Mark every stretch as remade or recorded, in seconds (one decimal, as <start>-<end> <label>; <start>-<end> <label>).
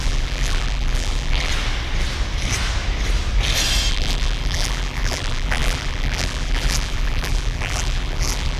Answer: 0.0-1.5 remade; 1.5-3.9 recorded; 3.9-8.6 remade